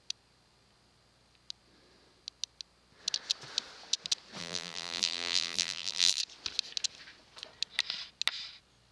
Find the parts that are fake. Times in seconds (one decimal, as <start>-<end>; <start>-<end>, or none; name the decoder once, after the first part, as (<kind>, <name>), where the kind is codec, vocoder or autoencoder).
4.4-6.2 (vocoder, BigVGAN v2)

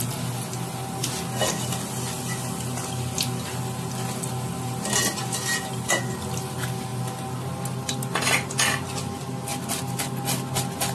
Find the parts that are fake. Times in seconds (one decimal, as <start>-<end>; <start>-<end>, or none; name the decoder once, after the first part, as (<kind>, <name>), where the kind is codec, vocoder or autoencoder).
1.4-5.6 (vocoder, BigVGAN v2); 9.5-10.0

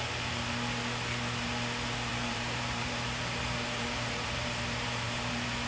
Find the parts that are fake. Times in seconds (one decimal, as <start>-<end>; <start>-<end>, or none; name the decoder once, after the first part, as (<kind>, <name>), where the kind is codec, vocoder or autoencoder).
2.1-5.7 (vocoder, BigVGAN v2)

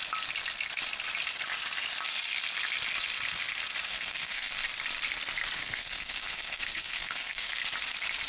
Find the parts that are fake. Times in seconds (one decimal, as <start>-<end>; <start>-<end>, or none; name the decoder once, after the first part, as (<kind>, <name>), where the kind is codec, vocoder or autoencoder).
3.9-4.5 (codec, SNAC); 5.6-7.5

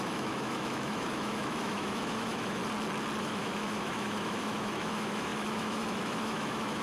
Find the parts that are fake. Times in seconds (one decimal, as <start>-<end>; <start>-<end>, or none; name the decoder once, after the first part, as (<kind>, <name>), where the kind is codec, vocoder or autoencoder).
0.0-2.6 (autoencoder, DAC-VAE); 3.2-6.8

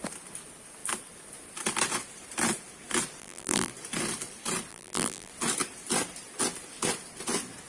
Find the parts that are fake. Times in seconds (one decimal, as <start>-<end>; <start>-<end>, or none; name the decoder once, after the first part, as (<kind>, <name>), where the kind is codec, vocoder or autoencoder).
3.2-3.7 (vocoder, BigVGAN v2); 4.7-5.3

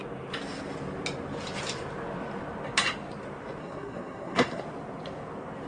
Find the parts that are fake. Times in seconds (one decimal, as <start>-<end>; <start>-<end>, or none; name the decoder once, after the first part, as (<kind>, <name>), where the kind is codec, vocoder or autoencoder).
3.6-4.6 (codec, SNAC)

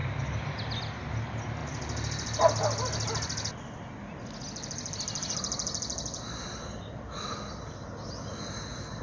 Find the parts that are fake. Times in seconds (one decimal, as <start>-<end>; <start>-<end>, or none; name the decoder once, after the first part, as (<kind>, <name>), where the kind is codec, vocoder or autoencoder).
none